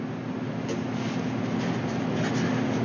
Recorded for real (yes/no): yes